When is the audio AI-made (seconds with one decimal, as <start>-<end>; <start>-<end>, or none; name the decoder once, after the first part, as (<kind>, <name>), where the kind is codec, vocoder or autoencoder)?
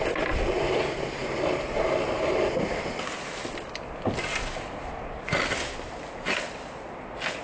none